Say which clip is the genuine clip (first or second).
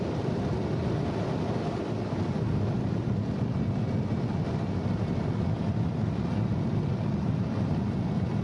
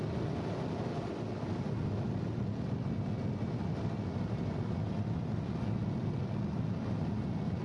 second